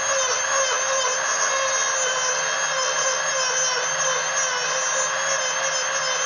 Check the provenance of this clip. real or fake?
real